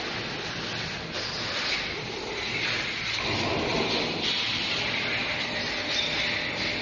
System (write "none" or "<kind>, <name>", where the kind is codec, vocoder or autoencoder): none